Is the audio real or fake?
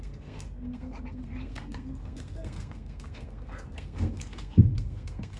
fake